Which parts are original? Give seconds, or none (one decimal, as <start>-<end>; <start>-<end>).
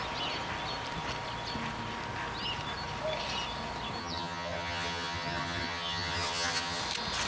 0.0-4.0; 6.8-7.3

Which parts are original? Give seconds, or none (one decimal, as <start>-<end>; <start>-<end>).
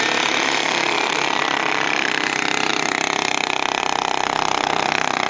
0.0-5.3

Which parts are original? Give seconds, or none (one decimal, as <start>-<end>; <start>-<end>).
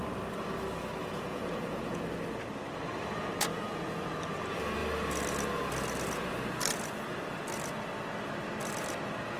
0.0-1.0; 2.0-3.5; 4.0-9.4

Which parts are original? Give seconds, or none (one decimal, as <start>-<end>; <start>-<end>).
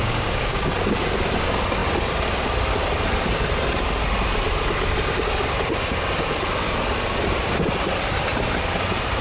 0.7-9.2